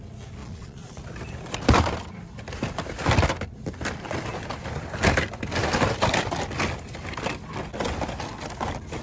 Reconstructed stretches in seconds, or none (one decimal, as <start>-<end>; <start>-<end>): 0.4-1.0